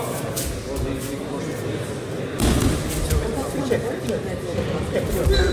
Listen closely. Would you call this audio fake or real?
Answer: real